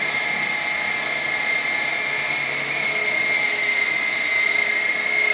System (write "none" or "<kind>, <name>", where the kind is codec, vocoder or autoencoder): none